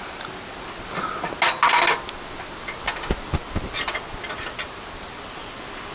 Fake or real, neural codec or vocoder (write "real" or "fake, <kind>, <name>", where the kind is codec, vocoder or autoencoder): real